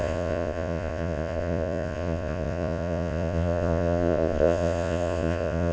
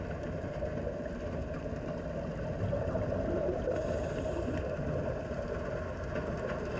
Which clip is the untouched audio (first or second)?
second